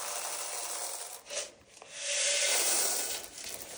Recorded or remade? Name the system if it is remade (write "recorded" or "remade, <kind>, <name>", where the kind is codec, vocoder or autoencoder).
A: recorded